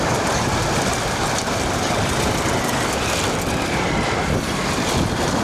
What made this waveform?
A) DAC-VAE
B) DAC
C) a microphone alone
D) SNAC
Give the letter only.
C